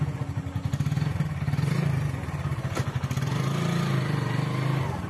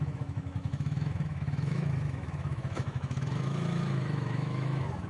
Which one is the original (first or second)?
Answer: first